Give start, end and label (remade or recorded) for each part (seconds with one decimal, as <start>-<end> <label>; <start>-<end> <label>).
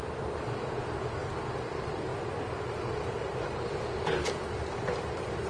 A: 0.0-1.2 remade; 1.2-1.7 recorded; 1.7-5.5 remade